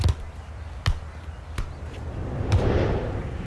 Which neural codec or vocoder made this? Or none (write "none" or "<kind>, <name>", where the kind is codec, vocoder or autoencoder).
none